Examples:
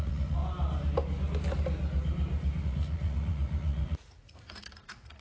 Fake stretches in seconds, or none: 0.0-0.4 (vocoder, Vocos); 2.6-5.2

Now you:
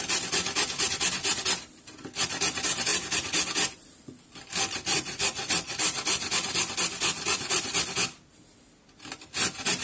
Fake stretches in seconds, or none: 4.9-5.8 (vocoder, Vocos); 7.1-7.8

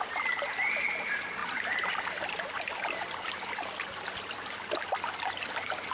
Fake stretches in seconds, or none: none

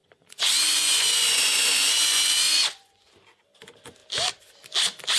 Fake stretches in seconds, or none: 0.0-3.1 (vocoder, Vocos)

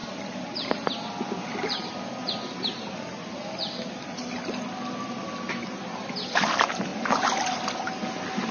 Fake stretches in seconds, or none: none

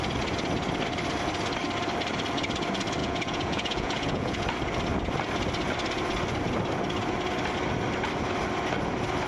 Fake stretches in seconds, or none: 3.0-4.4 (vocoder, Vocos)